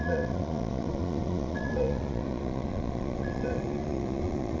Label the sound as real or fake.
fake